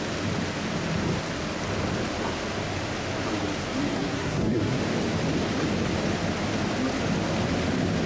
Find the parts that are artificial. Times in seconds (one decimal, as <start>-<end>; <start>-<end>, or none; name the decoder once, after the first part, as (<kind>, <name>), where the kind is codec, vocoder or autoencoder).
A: 3.9-4.8 (codec, SNAC)